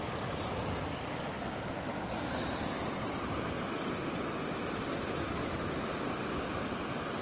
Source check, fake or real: real